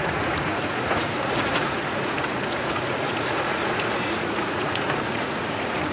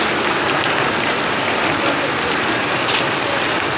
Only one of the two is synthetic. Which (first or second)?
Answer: first